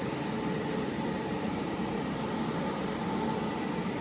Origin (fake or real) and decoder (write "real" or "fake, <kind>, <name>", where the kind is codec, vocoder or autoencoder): real